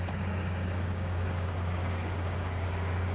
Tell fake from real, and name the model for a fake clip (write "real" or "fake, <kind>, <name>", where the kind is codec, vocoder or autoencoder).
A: fake, codec, DAC